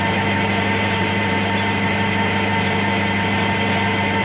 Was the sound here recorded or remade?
remade